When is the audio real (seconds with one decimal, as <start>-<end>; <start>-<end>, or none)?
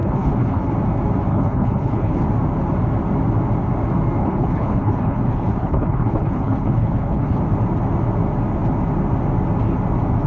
0.7-1.3; 2.2-4.2; 7.4-10.3